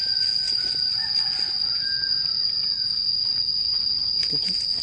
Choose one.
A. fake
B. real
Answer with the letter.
B